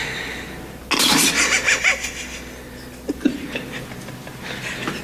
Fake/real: real